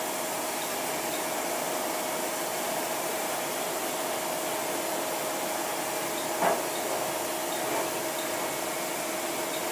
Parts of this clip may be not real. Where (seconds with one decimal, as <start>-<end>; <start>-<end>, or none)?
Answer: 2.5-4.1